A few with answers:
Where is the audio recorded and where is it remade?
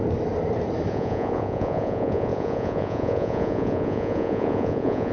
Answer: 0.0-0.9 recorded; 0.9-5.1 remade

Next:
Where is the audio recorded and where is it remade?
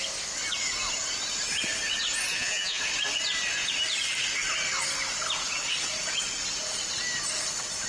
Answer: 0.0-2.3 recorded; 2.3-2.8 remade; 2.8-7.9 recorded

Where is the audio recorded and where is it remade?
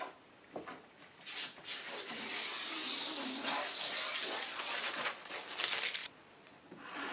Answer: 0.0-4.1 recorded; 4.1-5.3 remade; 5.3-6.0 recorded; 6.0-7.1 remade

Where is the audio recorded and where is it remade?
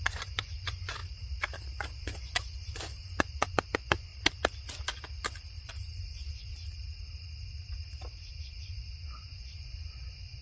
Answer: 0.0-1.0 remade; 1.0-2.0 recorded; 2.0-4.1 remade; 4.1-5.7 recorded; 5.7-6.5 remade; 6.5-8.3 recorded; 8.3-10.4 remade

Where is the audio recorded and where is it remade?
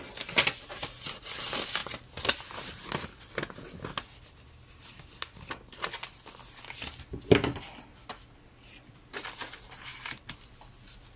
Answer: 0.0-11.2 recorded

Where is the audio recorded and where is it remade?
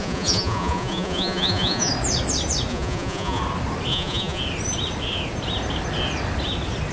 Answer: 0.0-1.9 remade; 1.9-2.7 recorded; 2.7-3.4 remade; 3.4-3.9 recorded; 3.9-4.4 remade; 4.4-6.9 recorded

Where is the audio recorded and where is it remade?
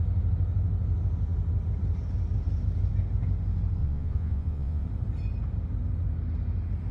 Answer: 0.0-3.8 recorded; 3.8-4.8 remade; 4.8-6.9 recorded